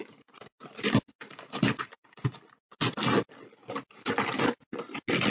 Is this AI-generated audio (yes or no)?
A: no